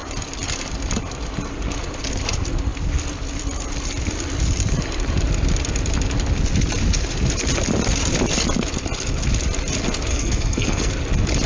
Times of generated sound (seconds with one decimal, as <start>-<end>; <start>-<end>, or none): 10.1-10.9